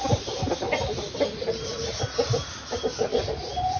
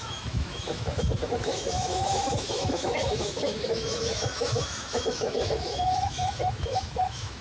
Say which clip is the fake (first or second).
second